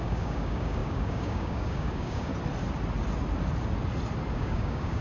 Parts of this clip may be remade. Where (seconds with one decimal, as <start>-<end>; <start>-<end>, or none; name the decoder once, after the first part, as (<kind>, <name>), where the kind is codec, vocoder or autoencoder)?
0.0-2.3 (codec, DAC); 4.3-5.0